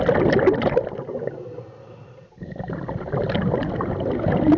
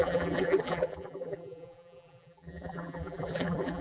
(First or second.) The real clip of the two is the first